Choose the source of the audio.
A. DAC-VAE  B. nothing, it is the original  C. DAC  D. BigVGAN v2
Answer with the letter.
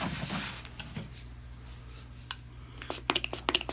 B